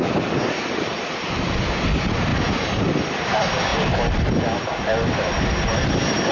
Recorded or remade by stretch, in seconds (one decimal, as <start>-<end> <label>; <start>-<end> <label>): 0.0-6.3 recorded